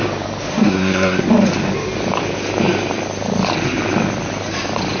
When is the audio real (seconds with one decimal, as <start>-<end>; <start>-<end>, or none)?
0.0-0.5; 1.3-5.0